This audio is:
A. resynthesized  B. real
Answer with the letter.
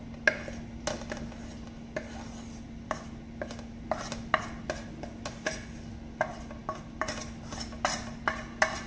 B